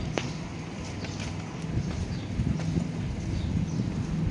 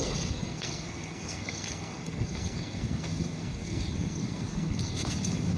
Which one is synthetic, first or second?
second